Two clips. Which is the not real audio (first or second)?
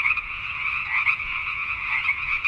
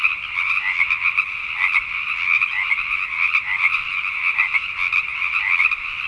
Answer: first